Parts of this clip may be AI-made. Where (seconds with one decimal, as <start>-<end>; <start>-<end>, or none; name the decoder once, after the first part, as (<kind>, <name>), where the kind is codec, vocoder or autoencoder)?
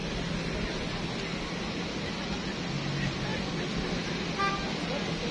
none